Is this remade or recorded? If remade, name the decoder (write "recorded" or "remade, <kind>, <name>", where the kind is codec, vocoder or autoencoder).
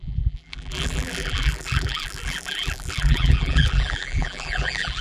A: remade, vocoder, BigVGAN v2